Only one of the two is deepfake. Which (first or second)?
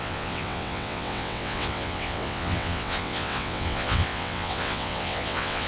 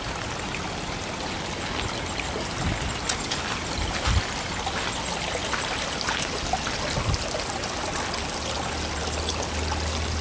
first